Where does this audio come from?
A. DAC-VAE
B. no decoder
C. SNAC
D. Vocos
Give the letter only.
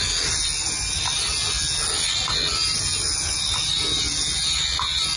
B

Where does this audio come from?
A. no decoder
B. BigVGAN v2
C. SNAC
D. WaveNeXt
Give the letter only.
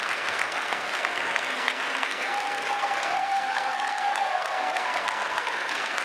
C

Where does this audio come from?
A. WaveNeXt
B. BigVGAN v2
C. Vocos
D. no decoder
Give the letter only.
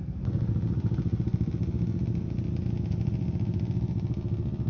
D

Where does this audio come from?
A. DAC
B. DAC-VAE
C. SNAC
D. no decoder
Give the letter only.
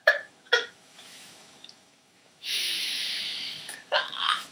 B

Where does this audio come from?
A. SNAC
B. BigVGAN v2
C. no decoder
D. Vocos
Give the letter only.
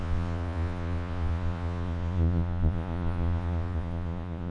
D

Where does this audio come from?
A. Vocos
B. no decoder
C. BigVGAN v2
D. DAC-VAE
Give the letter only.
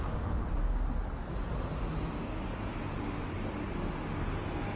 B